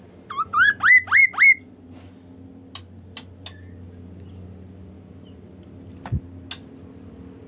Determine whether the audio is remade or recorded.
recorded